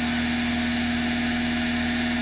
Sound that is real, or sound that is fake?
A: real